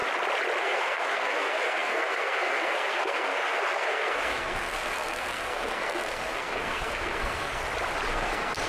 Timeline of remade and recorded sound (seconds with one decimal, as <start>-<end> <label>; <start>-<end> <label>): 0.0-0.6 recorded; 0.6-7.6 remade; 7.6-8.1 recorded; 8.1-8.7 remade